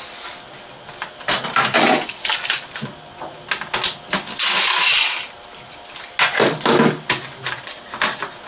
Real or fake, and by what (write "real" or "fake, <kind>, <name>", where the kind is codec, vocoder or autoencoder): real